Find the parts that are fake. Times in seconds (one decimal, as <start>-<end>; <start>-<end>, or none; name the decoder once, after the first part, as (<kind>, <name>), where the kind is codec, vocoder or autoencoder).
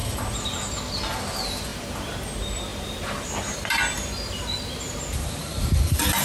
1.7-2.3 (vocoder, BigVGAN v2); 2.7-5.5